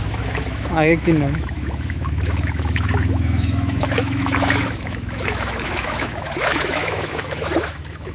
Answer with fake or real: fake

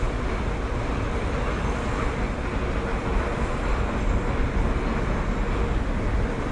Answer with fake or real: real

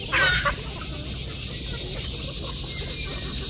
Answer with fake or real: real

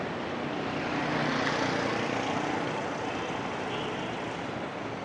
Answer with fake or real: real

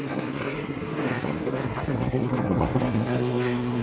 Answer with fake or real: fake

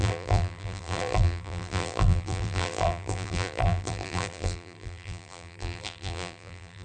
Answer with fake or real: fake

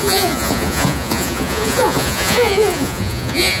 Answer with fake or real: fake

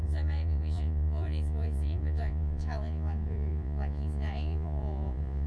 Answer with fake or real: fake